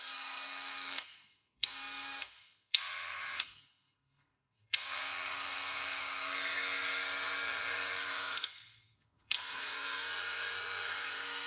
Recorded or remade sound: remade